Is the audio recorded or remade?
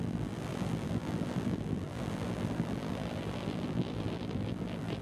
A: remade